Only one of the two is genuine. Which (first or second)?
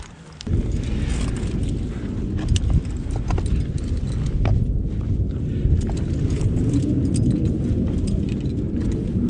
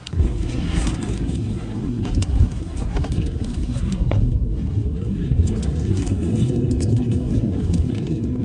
first